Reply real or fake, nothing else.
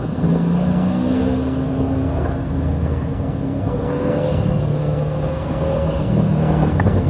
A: fake